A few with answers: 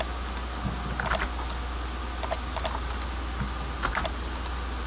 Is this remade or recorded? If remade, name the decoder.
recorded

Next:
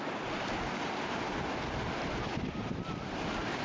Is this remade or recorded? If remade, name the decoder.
recorded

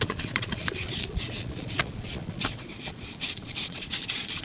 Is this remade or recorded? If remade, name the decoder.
remade, vocoder, Vocos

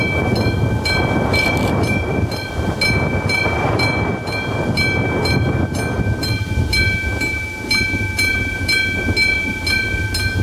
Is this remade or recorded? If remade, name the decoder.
recorded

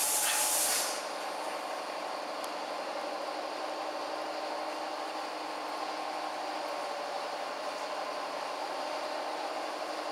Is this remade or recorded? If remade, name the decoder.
recorded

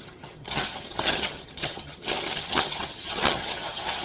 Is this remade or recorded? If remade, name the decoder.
remade, vocoder, HiFi-GAN